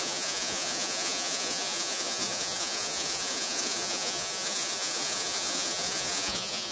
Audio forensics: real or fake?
fake